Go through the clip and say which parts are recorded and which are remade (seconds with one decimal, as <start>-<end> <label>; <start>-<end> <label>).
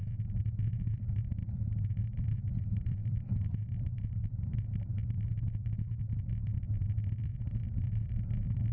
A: 0.0-8.7 remade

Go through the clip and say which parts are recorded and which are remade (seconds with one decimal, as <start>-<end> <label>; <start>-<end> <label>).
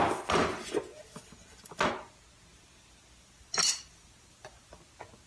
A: 0.0-0.9 recorded; 0.9-1.9 remade; 1.9-2.5 recorded; 2.5-4.8 remade; 4.8-5.3 recorded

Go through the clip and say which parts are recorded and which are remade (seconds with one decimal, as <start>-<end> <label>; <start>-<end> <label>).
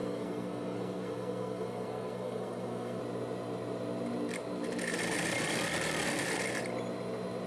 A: 0.0-3.0 remade; 3.0-7.5 recorded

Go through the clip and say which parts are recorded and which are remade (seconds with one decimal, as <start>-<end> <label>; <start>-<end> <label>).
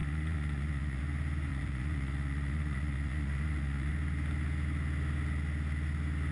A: 0.0-1.0 remade; 1.0-1.5 recorded; 1.5-3.9 remade; 3.9-6.3 recorded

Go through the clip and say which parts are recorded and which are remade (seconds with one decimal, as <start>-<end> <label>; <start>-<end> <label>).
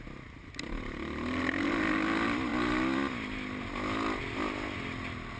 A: 0.0-5.4 recorded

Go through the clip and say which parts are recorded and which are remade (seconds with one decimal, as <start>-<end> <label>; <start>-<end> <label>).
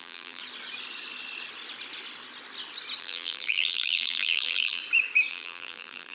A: 0.0-0.4 remade; 0.4-3.0 recorded; 3.0-4.8 remade; 4.8-5.3 recorded; 5.3-6.1 remade